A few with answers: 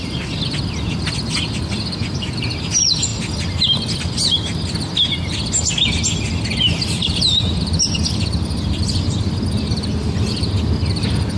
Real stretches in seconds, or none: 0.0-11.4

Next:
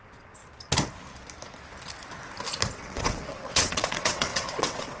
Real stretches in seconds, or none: 0.4-2.7